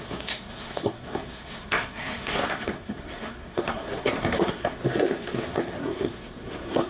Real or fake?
fake